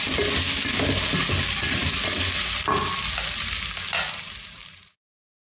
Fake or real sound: real